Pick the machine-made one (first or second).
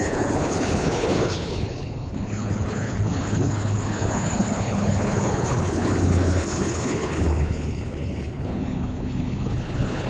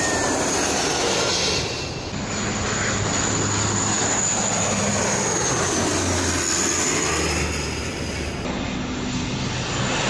first